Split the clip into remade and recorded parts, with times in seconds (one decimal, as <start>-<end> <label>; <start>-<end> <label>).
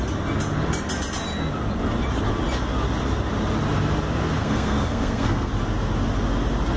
0.0-4.4 recorded; 4.4-5.5 remade; 5.5-6.8 recorded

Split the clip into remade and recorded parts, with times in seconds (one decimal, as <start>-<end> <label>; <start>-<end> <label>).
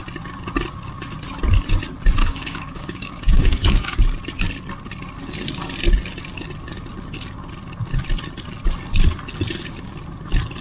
0.0-2.2 recorded; 2.2-4.0 remade; 4.0-10.6 recorded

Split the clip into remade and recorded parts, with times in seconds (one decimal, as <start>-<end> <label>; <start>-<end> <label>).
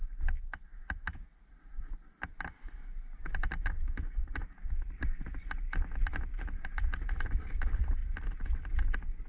0.0-9.3 recorded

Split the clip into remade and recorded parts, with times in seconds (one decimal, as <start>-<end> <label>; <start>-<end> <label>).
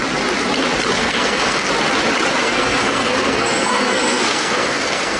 0.0-1.0 recorded; 1.0-1.7 remade; 1.7-2.4 recorded; 2.4-5.2 remade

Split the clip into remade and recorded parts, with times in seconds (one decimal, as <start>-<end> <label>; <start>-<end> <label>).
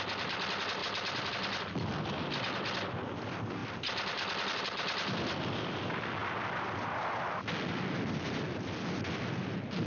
0.0-0.8 recorded; 0.8-1.3 remade; 1.3-9.9 recorded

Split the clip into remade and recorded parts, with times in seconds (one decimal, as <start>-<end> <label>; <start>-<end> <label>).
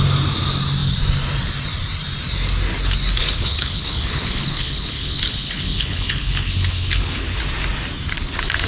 0.0-3.2 recorded; 3.2-7.4 remade; 7.4-8.7 recorded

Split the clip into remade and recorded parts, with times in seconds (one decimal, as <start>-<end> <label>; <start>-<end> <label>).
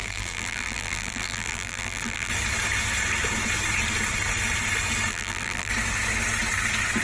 0.0-2.3 remade; 2.3-5.1 recorded; 5.1-5.7 remade; 5.7-7.0 recorded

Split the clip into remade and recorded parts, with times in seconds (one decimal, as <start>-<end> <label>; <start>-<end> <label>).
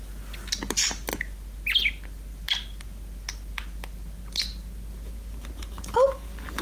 0.0-6.6 recorded